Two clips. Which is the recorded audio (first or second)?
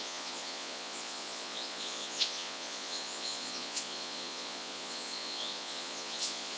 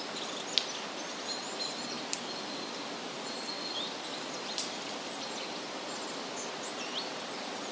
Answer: second